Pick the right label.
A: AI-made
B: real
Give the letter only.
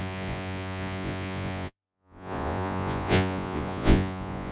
A